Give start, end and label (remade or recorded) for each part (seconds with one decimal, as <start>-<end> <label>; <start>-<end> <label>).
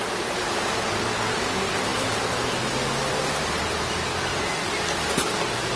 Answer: 0.0-5.8 recorded